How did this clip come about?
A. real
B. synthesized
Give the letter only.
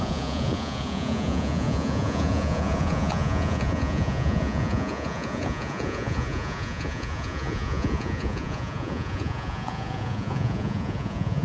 B